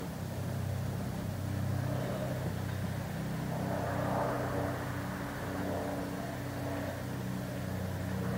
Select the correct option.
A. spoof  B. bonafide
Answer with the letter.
B